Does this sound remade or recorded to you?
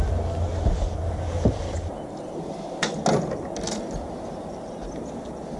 recorded